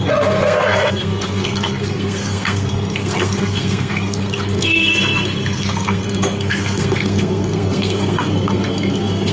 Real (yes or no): no